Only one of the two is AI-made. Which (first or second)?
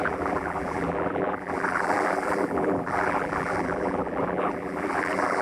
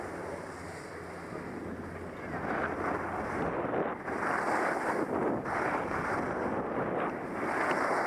first